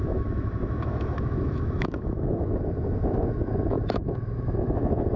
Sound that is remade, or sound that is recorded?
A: remade